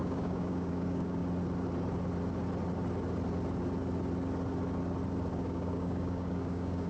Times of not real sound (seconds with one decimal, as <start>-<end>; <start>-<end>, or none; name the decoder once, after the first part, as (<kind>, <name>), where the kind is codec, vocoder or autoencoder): 0.0-1.2 (codec, DAC); 5.3-6.9